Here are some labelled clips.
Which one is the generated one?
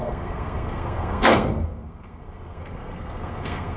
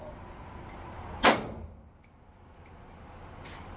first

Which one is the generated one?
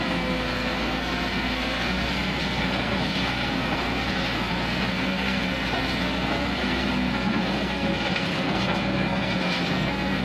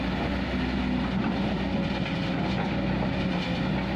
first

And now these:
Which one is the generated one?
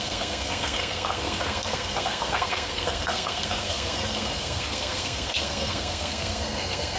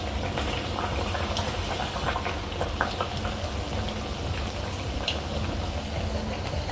first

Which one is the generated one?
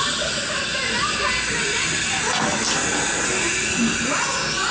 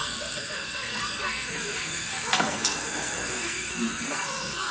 second